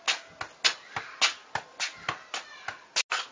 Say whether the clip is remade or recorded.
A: recorded